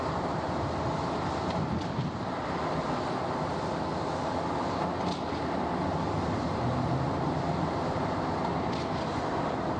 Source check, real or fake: real